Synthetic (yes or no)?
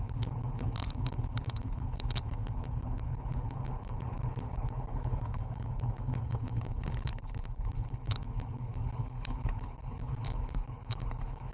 yes